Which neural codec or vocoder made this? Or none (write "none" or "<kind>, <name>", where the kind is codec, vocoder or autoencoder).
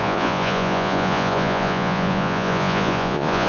vocoder, Vocos